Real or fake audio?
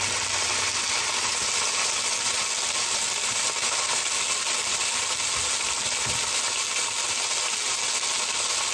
real